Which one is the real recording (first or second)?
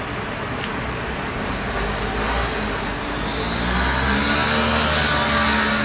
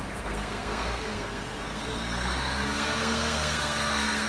first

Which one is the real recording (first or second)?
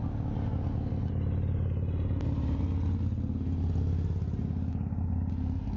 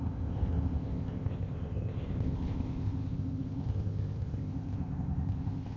first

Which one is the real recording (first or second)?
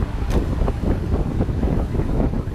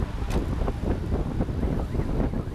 second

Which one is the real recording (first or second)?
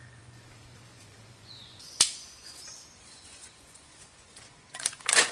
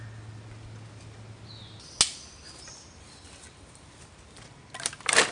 second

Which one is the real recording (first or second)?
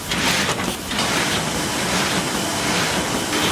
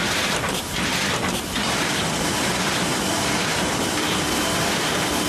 first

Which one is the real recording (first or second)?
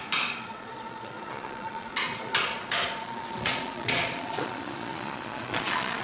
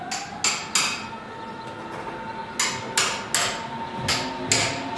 second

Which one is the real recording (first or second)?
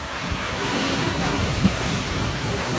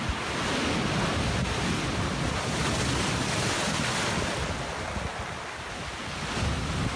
second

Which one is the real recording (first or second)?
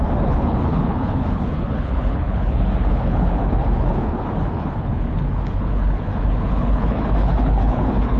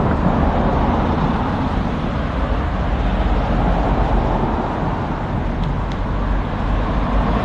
second